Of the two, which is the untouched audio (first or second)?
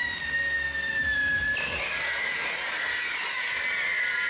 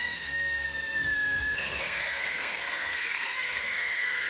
first